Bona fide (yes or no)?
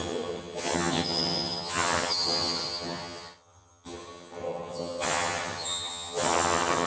no